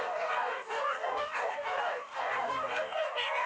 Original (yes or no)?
no